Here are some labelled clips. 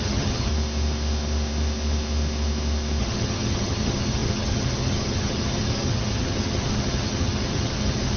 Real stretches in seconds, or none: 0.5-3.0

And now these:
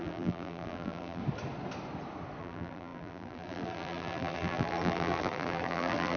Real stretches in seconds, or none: 1.2-2.4